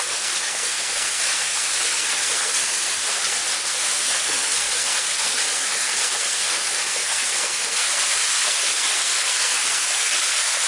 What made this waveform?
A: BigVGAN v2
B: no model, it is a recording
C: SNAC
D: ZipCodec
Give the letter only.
C